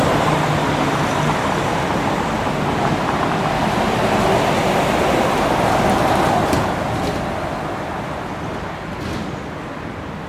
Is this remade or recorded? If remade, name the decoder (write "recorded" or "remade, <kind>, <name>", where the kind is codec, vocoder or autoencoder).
recorded